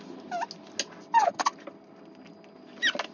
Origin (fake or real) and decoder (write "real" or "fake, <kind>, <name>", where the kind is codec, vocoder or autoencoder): real